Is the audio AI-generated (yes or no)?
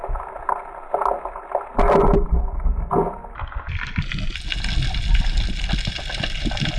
no